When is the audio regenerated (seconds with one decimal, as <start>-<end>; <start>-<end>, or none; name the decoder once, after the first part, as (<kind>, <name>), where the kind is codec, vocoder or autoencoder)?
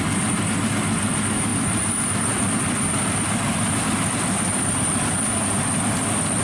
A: 1.5-5.3 (vocoder, BigVGAN v2)